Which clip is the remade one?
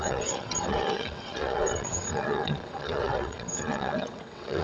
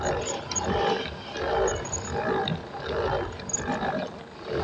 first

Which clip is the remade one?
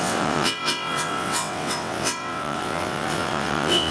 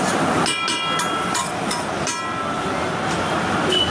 first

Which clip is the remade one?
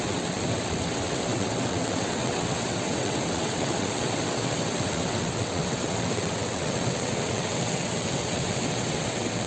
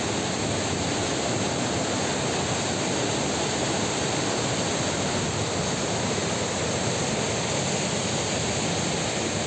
first